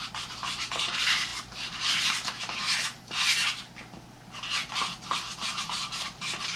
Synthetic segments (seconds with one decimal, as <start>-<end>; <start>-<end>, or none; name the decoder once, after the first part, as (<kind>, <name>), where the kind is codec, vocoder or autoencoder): 0.0-2.6 (vocoder, BigVGAN v2); 5.5-6.6